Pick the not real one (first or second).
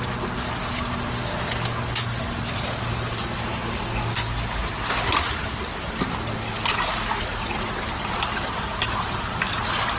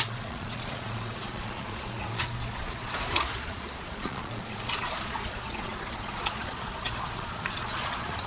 second